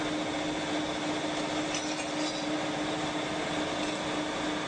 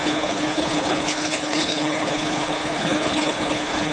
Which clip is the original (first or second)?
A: first